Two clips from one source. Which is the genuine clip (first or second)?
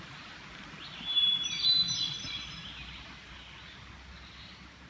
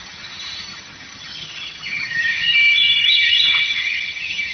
first